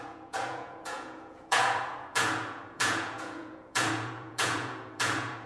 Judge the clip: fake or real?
fake